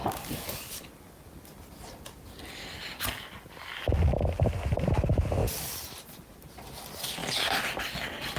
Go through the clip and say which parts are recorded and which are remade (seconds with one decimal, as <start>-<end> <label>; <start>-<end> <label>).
0.0-8.4 recorded

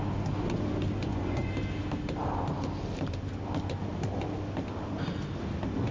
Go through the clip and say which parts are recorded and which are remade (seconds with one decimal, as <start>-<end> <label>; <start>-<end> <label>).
0.0-1.0 recorded; 1.0-1.5 remade; 1.5-5.9 recorded